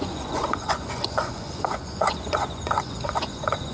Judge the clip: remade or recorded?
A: remade